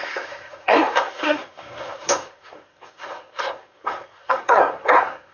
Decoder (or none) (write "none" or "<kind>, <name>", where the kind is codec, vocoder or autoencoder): codec, SNAC